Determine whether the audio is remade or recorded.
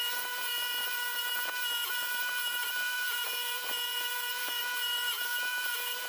remade